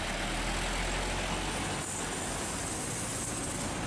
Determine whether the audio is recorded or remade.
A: recorded